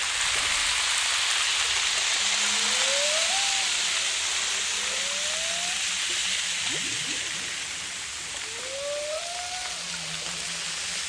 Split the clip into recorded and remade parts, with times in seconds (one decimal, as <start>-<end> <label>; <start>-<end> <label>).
0.0-11.1 recorded